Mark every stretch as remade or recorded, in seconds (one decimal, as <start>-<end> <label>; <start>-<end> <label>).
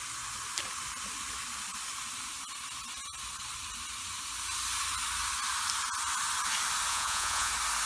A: 0.0-6.9 recorded; 6.9-7.5 remade; 7.5-7.9 recorded